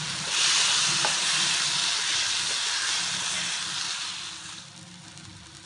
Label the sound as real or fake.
real